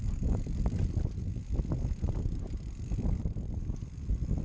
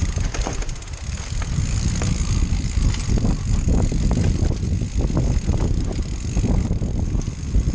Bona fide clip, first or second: second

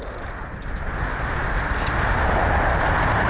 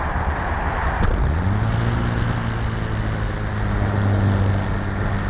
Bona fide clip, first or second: second